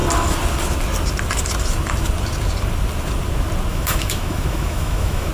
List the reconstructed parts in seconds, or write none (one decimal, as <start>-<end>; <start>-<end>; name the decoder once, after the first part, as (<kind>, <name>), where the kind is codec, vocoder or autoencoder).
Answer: 3.7-5.3 (autoencoder, DAC-VAE)